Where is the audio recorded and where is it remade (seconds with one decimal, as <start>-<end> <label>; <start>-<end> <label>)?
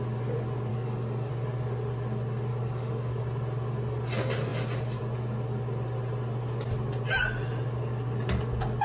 0.0-0.7 recorded; 0.7-1.3 remade; 1.3-2.5 recorded; 2.5-3.2 remade; 3.2-8.8 recorded